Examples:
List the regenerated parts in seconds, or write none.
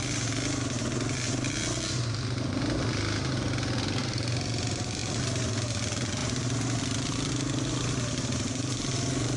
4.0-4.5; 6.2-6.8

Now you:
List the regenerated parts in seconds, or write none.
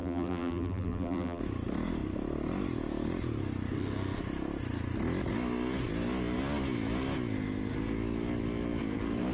0.0-1.4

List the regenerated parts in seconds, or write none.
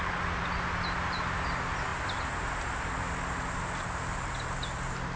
none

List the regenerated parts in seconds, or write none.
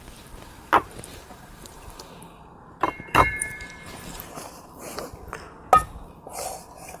1.1-5.0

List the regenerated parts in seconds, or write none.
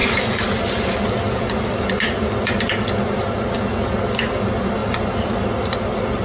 4.8-5.3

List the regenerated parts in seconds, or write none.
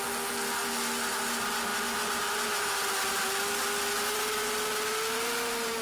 none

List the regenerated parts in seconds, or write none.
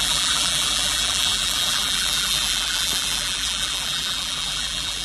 0.0-5.0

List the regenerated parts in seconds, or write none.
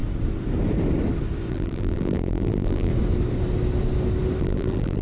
1.5-2.9; 4.4-5.0